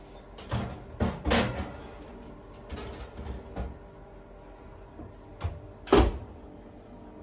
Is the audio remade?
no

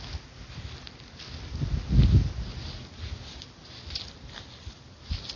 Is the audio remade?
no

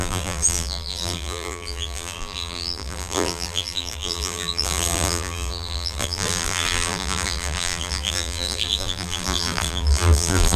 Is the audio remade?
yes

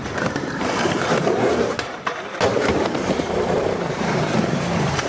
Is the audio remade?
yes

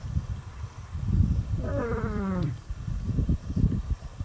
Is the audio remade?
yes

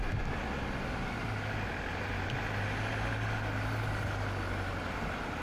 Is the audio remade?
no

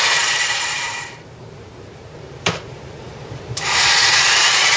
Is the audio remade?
yes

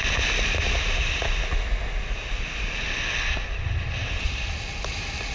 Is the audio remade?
no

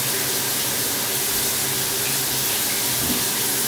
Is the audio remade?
no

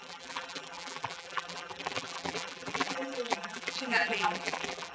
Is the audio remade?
yes